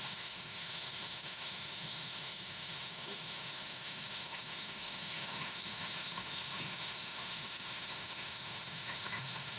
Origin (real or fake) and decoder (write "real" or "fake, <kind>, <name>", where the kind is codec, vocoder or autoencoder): fake, autoencoder, DAC-VAE